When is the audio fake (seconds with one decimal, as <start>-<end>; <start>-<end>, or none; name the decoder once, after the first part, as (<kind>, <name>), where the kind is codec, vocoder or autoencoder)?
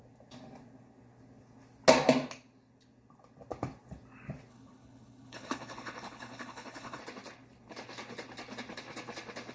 4.5-7.0 (codec, HILCodec)